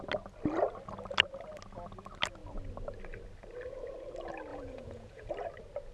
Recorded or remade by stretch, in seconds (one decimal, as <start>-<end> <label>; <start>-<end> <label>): 0.0-4.5 recorded; 4.5-5.3 remade; 5.3-5.9 recorded